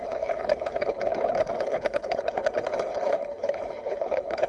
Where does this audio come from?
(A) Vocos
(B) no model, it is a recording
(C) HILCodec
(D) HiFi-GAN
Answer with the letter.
C